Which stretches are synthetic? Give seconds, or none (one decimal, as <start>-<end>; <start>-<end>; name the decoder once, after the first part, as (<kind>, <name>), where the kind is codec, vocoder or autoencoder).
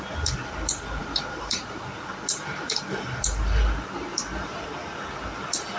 1.0-1.8 (vocoder, BigVGAN v2); 4.1-4.6